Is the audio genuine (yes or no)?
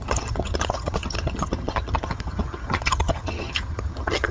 no